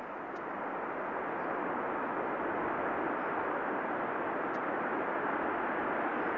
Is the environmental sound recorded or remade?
recorded